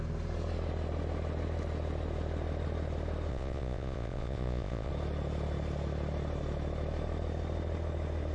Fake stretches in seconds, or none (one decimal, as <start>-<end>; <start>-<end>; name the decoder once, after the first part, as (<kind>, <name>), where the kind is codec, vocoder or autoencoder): 3.3-4.9 (vocoder, Vocos)